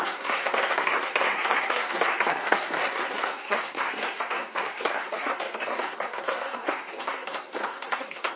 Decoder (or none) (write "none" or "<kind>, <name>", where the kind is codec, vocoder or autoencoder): codec, SNAC